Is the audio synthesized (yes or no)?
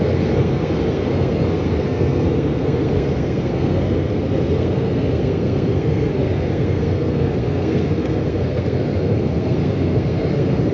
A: yes